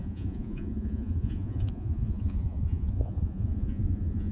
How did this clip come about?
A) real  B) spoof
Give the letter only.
B